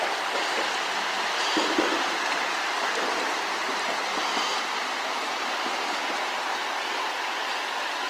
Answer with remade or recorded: recorded